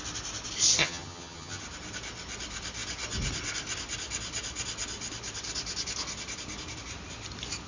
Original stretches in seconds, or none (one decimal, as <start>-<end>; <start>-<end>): 0.0-0.8; 1.6-7.7